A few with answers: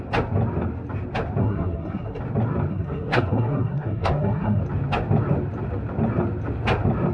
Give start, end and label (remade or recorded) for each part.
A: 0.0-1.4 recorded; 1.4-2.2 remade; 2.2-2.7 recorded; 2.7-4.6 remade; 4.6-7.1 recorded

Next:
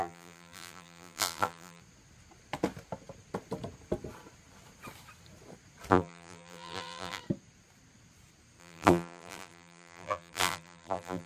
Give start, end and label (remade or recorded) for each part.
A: 0.0-1.8 remade; 1.8-5.9 recorded; 5.9-7.2 remade; 7.2-8.6 recorded; 8.6-11.3 remade

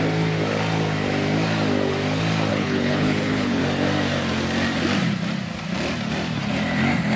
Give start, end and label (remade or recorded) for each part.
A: 0.0-2.5 recorded; 2.5-3.6 remade; 3.6-7.2 recorded

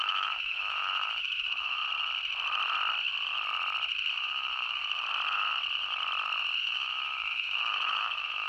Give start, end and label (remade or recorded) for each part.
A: 0.0-1.8 remade; 1.8-4.1 recorded; 4.1-4.8 remade; 4.8-6.6 recorded; 6.6-8.5 remade

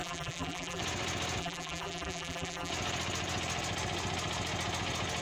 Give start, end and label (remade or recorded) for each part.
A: 0.0-0.8 remade; 0.8-1.4 recorded; 1.4-2.7 remade; 2.7-5.2 recorded

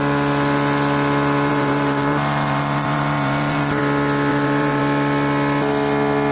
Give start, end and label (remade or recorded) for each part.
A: 0.0-1.5 recorded; 1.5-3.8 remade; 3.8-4.3 recorded; 4.3-4.8 remade; 4.8-6.3 recorded